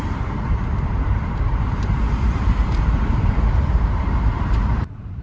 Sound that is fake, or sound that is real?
fake